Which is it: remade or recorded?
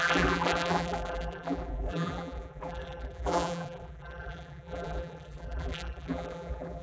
remade